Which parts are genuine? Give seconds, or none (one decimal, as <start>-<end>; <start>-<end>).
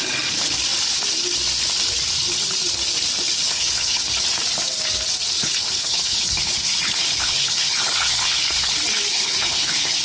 0.0-3.4; 4.0-5.4; 8.7-9.1